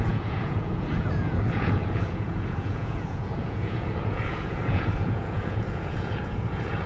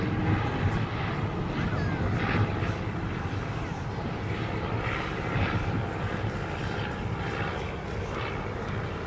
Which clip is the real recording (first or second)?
second